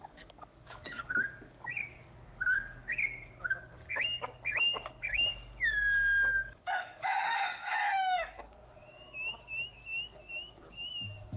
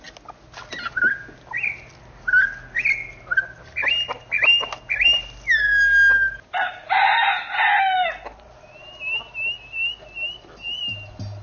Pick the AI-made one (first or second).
first